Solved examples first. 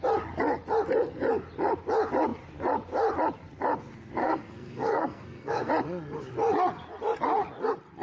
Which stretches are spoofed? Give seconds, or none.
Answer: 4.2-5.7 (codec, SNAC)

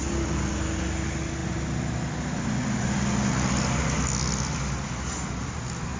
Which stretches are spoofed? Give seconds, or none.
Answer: none

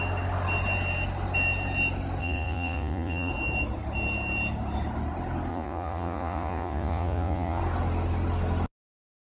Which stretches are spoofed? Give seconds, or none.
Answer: 2.2-3.3 (vocoder, Vocos); 5.5-7.6

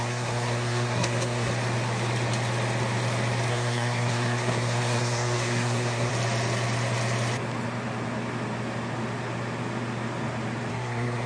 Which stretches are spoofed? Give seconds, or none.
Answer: 0.0-1.5 (codec, SNAC); 3.5-6.1; 10.7-11.3

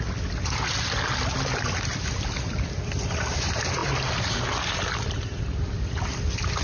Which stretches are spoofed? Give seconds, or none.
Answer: none

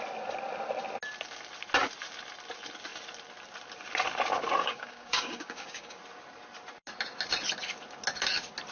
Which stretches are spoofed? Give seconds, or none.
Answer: 4.6-6.0 (codec, DAC)

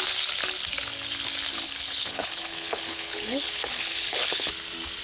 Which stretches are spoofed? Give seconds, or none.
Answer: 1.5-4.5 (codec, HILCodec)